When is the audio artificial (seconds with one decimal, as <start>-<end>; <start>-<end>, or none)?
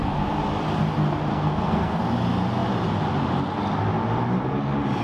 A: 1.3-2.0